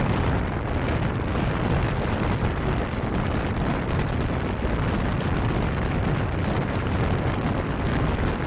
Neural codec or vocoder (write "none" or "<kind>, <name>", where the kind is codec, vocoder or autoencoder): none